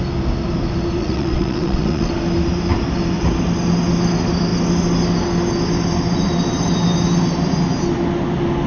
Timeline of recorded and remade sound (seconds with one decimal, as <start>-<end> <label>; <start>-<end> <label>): 0.0-1.0 recorded; 1.0-2.1 remade; 2.1-8.7 recorded